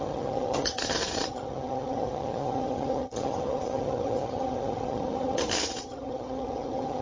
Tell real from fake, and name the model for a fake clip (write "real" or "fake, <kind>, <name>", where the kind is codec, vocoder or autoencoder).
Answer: fake, vocoder, HiFi-GAN